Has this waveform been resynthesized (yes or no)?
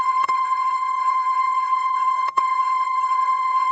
yes